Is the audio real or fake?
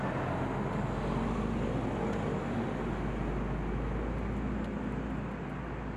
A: real